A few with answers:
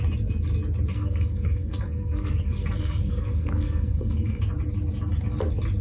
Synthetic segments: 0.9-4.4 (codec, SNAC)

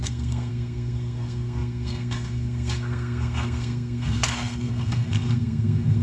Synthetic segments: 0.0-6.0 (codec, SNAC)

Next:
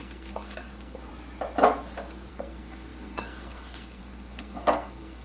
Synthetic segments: 0.0-1.1 (codec, SNAC); 2.3-5.2

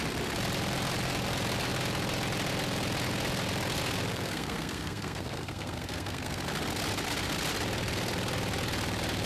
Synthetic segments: 4.1-6.4 (codec, SNAC)